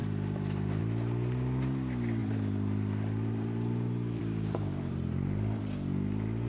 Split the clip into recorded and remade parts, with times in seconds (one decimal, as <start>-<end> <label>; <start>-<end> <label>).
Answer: 0.0-0.8 remade; 0.8-2.2 recorded; 2.2-5.6 remade; 5.6-6.5 recorded